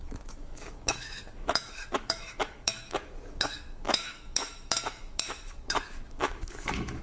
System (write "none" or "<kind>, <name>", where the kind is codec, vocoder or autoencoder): autoencoder, DAC-VAE